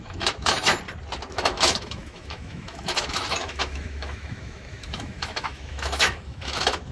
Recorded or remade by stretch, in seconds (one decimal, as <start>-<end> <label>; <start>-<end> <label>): 0.0-0.7 remade; 0.7-1.3 recorded; 1.3-6.9 remade